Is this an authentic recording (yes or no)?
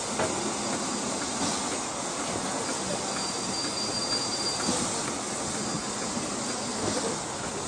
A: yes